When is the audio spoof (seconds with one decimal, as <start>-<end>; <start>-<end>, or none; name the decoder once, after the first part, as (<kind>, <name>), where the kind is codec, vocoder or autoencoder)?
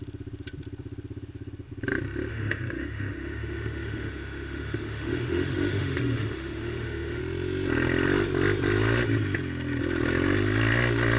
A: 2.3-7.2 (autoencoder, DAC-VAE)